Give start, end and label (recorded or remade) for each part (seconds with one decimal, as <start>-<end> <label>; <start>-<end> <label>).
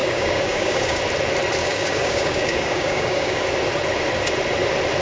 0.0-1.0 remade; 1.0-1.6 recorded; 1.6-3.4 remade; 3.4-5.0 recorded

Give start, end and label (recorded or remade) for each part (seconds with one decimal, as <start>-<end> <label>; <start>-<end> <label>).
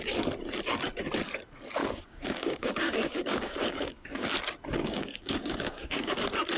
0.0-1.8 recorded; 1.8-4.3 remade; 4.3-4.8 recorded; 4.8-6.1 remade; 6.1-6.6 recorded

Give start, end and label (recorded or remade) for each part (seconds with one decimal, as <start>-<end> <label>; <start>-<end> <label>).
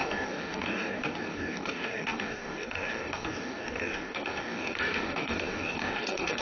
0.0-6.4 remade